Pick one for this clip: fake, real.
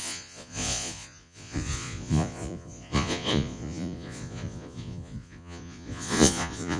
fake